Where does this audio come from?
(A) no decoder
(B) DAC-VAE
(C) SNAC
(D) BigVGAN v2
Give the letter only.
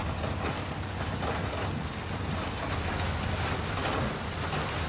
A